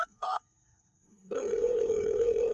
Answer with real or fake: fake